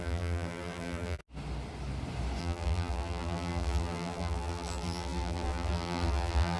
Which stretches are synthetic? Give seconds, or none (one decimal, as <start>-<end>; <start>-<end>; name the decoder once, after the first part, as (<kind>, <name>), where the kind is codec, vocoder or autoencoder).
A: 0.0-1.2 (vocoder, BigVGAN v2); 2.4-6.6